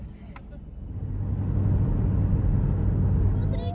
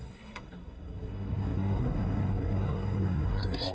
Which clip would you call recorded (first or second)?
first